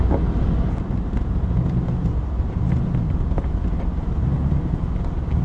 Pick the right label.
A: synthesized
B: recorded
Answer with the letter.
B